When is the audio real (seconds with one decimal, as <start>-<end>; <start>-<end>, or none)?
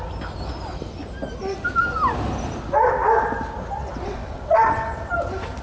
0.0-3.8; 5.1-5.6